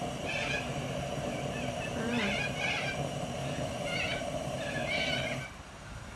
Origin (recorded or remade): remade